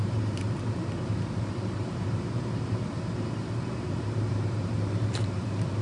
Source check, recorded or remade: remade